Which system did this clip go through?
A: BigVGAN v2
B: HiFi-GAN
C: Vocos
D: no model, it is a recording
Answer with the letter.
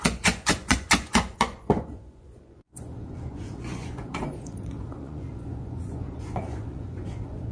C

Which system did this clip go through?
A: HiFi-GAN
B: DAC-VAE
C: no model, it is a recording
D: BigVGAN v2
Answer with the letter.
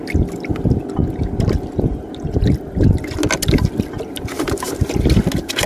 C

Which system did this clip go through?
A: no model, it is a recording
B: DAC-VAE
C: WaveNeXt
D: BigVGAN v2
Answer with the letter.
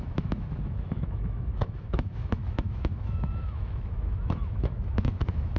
B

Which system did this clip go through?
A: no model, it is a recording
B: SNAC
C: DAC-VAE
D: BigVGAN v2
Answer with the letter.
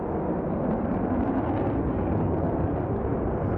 A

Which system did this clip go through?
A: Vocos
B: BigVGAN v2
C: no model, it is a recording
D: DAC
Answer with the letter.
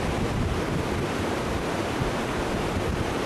C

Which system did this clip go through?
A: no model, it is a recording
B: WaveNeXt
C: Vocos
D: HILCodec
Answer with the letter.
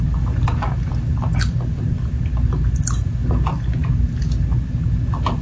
A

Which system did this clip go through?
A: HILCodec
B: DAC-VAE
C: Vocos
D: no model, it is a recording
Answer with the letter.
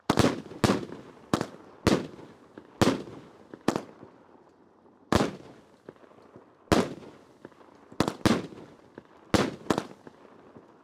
D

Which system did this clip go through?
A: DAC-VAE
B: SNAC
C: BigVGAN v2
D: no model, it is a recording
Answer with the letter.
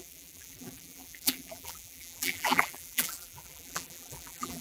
C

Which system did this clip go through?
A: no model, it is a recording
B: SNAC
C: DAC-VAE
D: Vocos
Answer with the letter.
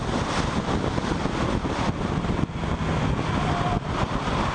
A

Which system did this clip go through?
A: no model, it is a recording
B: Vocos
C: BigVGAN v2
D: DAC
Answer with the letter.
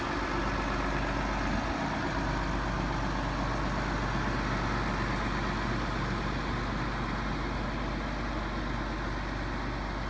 A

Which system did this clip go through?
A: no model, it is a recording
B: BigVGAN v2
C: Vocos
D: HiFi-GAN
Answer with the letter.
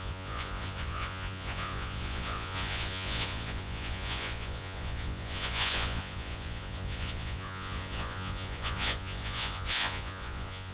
C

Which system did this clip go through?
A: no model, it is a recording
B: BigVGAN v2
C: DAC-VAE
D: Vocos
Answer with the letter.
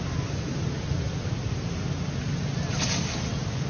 A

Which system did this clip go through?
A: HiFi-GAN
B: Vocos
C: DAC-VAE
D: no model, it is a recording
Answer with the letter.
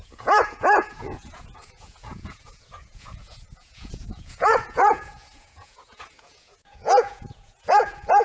B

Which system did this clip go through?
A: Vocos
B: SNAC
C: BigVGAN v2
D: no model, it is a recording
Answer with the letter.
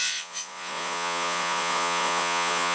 A